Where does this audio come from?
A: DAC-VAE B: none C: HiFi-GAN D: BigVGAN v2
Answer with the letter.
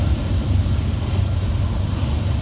B